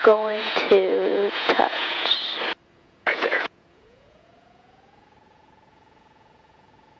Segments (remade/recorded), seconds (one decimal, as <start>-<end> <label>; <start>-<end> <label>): 0.0-2.1 remade; 2.1-2.7 recorded; 2.7-7.0 remade

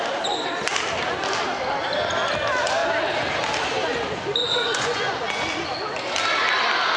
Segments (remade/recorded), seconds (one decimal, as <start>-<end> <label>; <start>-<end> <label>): 0.0-4.4 recorded; 4.4-5.4 remade; 5.4-7.0 recorded

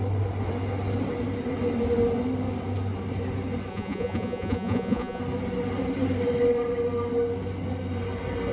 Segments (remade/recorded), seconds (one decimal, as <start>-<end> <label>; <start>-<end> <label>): 0.0-3.7 recorded; 3.7-5.2 remade; 5.2-8.5 recorded

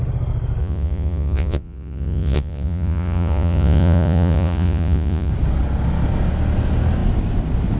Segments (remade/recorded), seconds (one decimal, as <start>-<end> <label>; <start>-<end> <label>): 0.0-0.6 recorded; 0.6-5.3 remade; 5.3-7.8 recorded

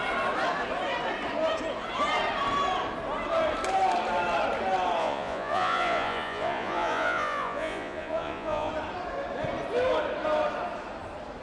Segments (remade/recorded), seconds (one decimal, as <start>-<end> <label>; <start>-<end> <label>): 0.0-5.0 recorded; 5.0-8.7 remade; 8.7-11.4 recorded

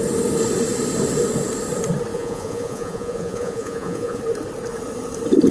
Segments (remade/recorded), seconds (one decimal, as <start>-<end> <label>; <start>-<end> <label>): 0.0-2.1 recorded; 2.1-4.2 remade; 4.2-5.5 recorded

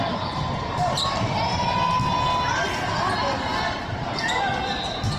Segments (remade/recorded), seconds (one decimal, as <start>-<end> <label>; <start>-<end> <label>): 0.0-5.2 recorded

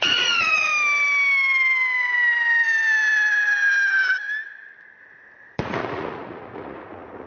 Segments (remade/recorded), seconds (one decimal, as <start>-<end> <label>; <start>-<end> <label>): 0.0-0.7 remade; 0.7-5.0 recorded; 5.0-7.3 remade